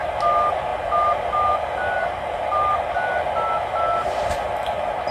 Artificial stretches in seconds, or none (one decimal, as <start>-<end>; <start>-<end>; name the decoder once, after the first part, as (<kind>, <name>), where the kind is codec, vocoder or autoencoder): none